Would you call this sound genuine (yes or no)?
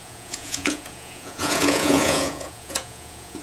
no